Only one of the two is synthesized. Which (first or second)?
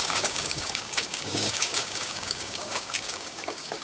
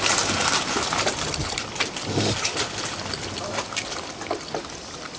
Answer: first